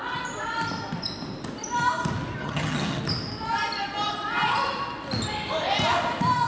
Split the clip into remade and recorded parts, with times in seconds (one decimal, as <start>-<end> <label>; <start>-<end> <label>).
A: 0.0-2.4 recorded; 2.4-3.0 remade; 3.0-6.5 recorded